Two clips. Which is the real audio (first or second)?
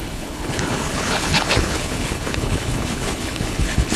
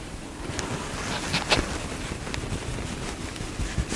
second